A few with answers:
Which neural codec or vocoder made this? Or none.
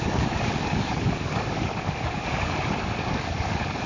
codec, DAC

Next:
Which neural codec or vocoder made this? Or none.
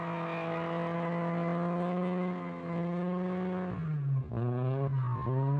none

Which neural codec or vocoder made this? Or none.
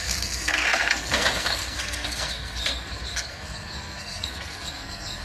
codec, SNAC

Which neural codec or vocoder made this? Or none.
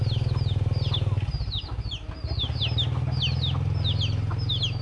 none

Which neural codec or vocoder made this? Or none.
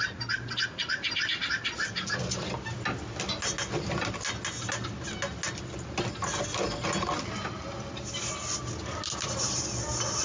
none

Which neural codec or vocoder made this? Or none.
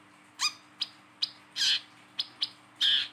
none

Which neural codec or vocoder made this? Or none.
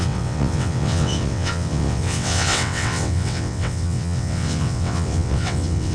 vocoder, WaveNeXt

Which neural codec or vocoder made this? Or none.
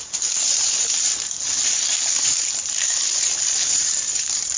vocoder, BigVGAN v2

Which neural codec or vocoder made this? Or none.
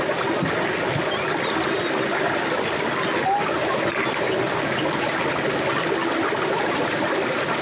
none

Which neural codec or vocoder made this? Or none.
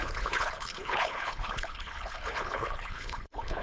codec, HILCodec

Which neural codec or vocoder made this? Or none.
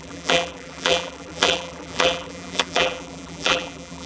vocoder, BigVGAN v2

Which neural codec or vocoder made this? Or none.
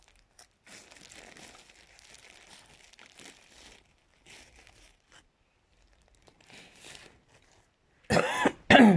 none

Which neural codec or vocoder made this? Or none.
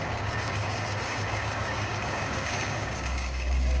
codec, DAC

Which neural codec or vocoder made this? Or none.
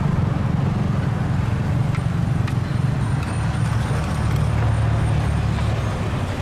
none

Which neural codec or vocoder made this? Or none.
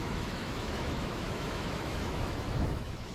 autoencoder, DAC-VAE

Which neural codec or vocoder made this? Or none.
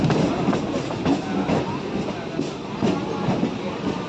none